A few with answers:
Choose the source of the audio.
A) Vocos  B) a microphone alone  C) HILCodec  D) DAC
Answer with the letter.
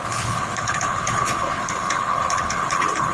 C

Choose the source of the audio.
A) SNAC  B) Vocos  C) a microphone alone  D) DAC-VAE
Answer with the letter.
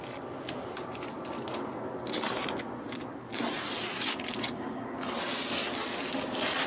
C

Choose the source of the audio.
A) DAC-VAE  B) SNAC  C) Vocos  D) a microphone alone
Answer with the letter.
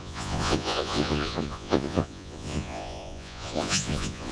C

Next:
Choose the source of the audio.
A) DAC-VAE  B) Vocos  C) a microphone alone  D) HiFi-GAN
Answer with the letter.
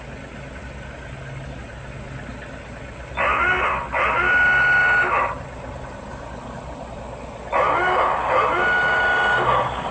C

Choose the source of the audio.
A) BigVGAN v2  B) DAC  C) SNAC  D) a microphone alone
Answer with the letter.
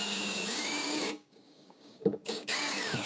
B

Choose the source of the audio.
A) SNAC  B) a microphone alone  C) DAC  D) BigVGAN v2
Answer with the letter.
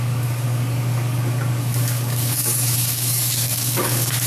C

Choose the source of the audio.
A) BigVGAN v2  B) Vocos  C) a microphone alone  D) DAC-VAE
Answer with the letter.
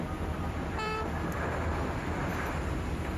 A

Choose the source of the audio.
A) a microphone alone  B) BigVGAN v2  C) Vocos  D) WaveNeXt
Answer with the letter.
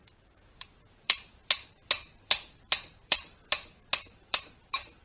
B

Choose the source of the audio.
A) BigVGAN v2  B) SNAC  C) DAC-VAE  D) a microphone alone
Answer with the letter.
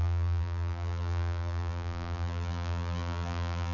A